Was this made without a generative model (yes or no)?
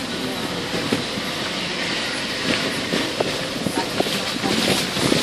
no